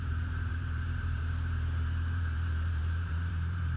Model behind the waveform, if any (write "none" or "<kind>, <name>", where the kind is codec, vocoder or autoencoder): vocoder, BigVGAN v2